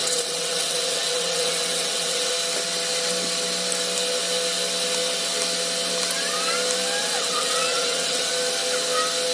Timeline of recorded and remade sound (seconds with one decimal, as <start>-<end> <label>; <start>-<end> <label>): 0.0-2.3 remade; 2.3-7.0 recorded; 7.0-8.3 remade; 8.3-9.3 recorded